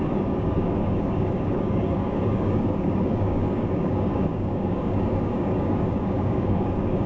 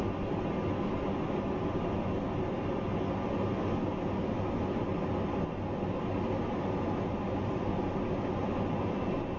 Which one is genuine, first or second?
second